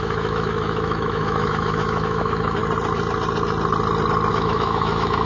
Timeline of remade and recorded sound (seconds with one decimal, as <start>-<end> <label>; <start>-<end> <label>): 0.0-2.6 remade; 2.6-4.3 recorded; 4.3-5.3 remade